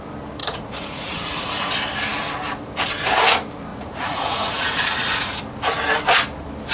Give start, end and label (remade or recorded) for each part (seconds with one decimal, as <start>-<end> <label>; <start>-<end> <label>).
0.0-0.4 recorded; 0.4-1.7 remade; 1.7-3.7 recorded; 3.7-5.4 remade; 5.4-6.7 recorded